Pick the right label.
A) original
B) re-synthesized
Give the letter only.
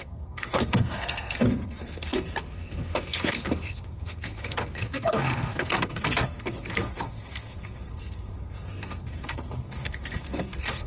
B